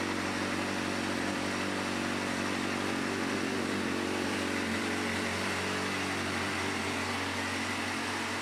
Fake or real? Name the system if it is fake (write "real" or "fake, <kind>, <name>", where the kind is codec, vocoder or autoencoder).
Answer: real